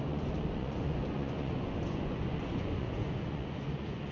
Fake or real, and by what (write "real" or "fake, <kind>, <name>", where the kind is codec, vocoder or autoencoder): fake, vocoder, Vocos